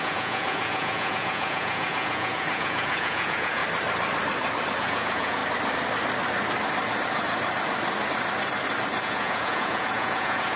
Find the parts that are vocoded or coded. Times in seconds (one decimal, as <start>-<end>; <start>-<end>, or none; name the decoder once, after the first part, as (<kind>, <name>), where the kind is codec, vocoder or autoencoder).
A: 0.0-3.6 (vocoder, Vocos); 4.8-5.4; 9.0-10.6